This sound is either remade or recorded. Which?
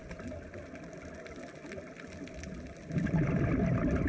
recorded